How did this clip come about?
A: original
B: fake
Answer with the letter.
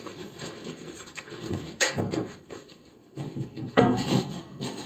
B